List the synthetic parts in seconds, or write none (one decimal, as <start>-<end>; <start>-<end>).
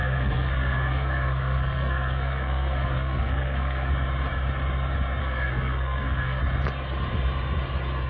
0.0-3.9; 5.2-6.4